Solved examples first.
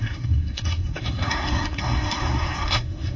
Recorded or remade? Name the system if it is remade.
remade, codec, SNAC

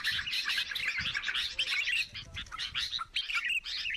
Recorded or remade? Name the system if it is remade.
recorded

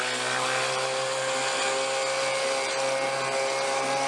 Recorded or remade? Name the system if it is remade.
recorded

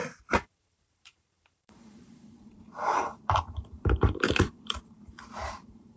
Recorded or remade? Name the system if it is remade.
remade, vocoder, BigVGAN v2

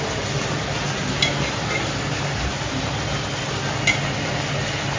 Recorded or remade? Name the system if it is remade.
recorded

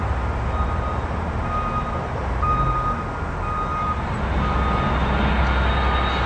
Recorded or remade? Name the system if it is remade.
recorded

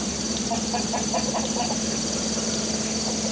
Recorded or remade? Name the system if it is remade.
recorded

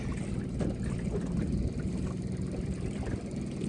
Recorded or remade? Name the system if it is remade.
recorded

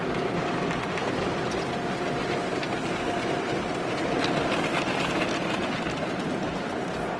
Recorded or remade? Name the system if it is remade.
recorded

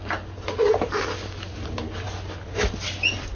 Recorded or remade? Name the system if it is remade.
recorded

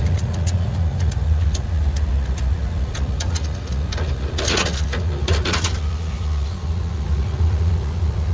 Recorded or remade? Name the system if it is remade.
remade, vocoder, Vocos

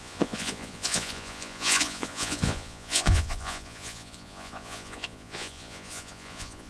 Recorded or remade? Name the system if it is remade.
remade, vocoder, Vocos